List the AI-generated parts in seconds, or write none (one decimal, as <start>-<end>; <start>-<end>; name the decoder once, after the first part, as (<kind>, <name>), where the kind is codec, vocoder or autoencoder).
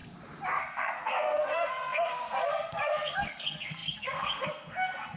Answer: 0.6-5.2 (codec, SNAC)